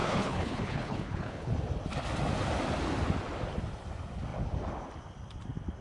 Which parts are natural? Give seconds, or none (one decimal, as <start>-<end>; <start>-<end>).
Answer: 1.5-5.8